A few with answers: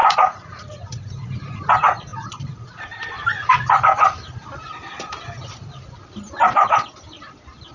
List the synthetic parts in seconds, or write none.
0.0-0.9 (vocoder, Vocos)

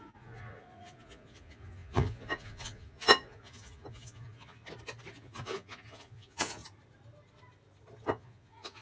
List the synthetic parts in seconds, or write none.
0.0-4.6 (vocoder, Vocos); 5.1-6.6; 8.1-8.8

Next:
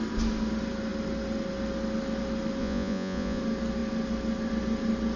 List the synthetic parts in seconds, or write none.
2.6-3.4 (vocoder, Vocos)